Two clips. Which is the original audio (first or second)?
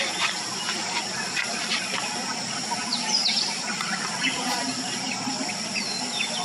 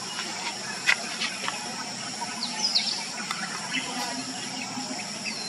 second